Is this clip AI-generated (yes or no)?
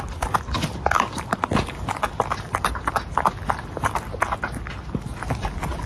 no